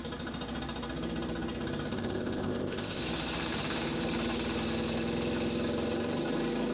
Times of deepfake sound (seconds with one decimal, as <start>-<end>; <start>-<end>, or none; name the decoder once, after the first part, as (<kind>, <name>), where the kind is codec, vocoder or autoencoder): 1.9-3.0 (codec, ZipCodec)